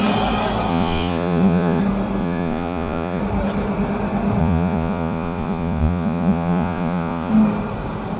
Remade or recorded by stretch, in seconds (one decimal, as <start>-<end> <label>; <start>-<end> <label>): 0.0-0.7 recorded; 0.7-1.8 remade; 1.8-2.2 recorded; 2.2-3.2 remade; 3.2-4.4 recorded; 4.4-7.3 remade; 7.3-8.2 recorded